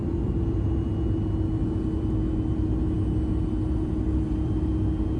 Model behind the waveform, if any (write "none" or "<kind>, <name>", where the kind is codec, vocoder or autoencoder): none